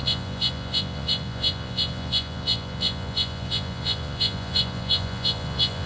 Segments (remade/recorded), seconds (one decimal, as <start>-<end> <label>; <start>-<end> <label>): 0.0-5.9 remade